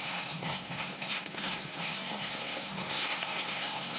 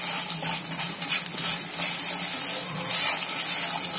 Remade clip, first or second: first